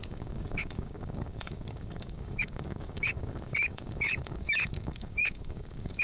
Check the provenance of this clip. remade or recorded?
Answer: remade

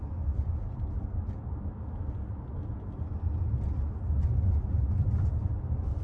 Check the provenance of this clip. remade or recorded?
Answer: recorded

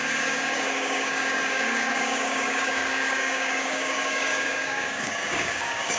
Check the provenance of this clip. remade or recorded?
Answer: remade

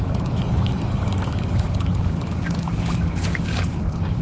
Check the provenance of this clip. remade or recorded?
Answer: remade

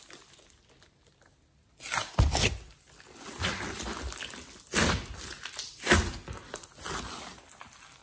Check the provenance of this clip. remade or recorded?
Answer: recorded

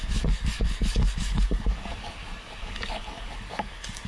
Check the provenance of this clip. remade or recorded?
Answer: remade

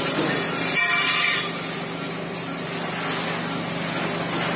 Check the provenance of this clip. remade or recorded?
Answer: recorded